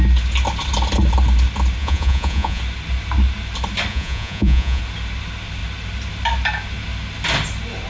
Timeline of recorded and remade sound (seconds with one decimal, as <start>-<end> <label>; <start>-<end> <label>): 0.0-1.8 recorded; 1.8-2.6 remade; 2.6-3.9 recorded; 3.9-4.8 remade; 4.8-7.9 recorded